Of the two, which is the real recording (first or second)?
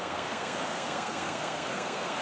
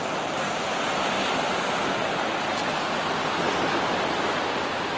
second